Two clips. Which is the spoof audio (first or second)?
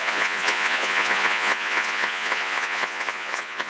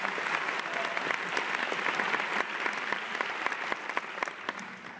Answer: first